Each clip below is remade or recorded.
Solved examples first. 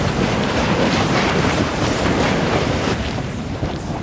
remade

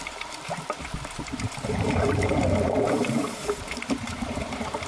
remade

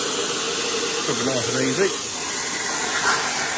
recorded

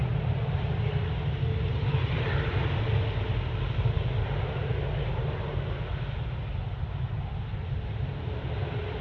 recorded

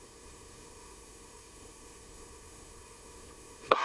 remade